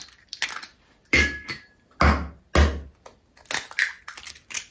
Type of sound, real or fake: real